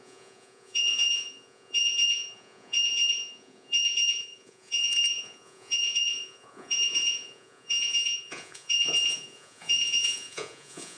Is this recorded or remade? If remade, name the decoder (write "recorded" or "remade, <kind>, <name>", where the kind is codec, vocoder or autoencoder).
remade, vocoder, Vocos